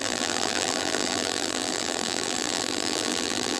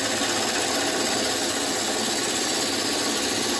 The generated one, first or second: first